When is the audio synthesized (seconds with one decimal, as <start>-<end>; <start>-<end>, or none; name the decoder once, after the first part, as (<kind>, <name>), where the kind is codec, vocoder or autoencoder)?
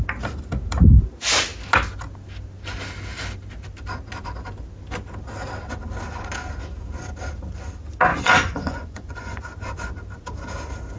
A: 8.1-9.4 (vocoder, Vocos)